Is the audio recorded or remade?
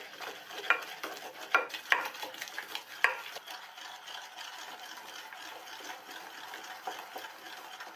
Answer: recorded